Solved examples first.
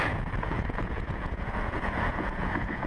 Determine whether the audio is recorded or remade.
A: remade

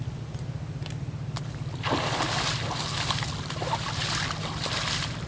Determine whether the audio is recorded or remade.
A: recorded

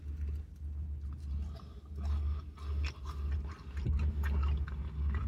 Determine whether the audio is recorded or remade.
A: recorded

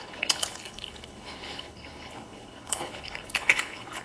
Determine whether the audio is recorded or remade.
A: remade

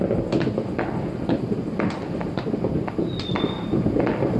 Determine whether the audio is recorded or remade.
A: recorded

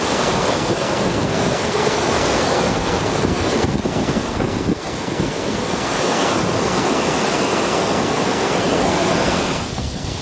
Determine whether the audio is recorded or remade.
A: remade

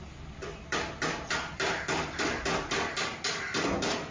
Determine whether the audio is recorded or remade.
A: recorded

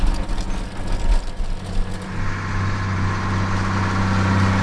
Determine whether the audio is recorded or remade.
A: recorded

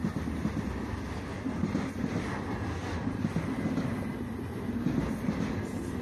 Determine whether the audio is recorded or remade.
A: recorded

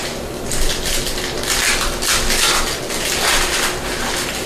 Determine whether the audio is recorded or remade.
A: recorded